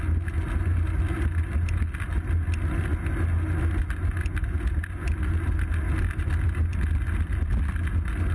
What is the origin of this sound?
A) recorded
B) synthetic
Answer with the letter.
A